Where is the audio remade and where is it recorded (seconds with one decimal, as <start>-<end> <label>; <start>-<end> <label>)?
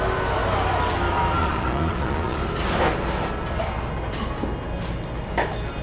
0.0-1.4 recorded; 1.4-2.4 remade; 2.4-5.8 recorded